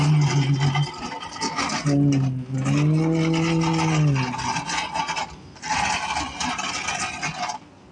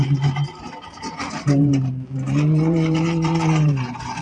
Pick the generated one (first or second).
second